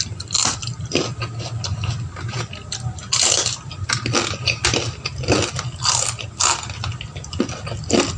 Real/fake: real